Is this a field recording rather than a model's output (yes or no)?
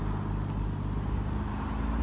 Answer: yes